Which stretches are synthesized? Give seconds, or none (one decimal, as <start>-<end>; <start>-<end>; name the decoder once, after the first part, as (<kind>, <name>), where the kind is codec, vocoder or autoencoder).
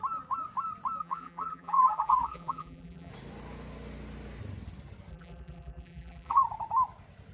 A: 1.0-3.1 (vocoder, BigVGAN v2); 5.1-6.4